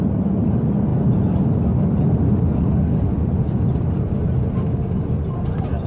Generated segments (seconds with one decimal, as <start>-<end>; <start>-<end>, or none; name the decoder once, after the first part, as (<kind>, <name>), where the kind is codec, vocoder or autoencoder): none